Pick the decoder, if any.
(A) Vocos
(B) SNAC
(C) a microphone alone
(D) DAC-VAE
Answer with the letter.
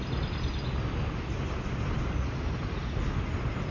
C